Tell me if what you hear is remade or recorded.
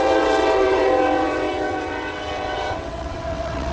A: remade